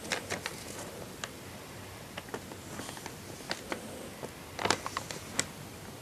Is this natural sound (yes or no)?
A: yes